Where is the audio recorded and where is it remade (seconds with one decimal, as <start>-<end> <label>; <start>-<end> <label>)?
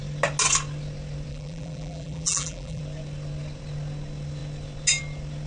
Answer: 0.0-1.3 recorded; 1.3-2.8 remade; 2.8-5.5 recorded